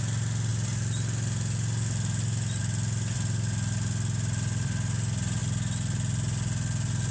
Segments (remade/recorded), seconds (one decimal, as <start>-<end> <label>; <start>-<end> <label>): 0.0-7.1 recorded